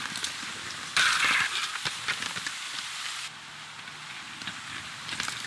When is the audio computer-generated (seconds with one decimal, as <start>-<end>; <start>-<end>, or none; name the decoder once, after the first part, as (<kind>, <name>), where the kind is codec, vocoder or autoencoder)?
none